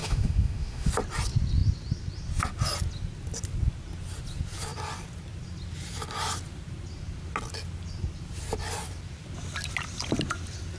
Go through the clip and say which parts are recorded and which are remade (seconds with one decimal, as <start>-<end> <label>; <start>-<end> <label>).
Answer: 0.0-0.9 remade; 0.9-10.8 recorded